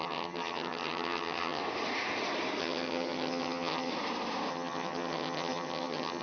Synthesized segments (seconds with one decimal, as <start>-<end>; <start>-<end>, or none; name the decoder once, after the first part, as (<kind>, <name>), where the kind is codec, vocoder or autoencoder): 0.0-1.6 (vocoder, HiFi-GAN); 2.6-3.9; 4.5-6.2